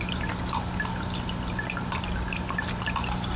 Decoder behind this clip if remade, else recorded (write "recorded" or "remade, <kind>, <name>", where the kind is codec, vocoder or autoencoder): recorded